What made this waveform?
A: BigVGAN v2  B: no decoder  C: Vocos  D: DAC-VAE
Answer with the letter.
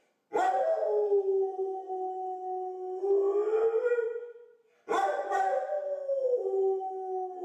B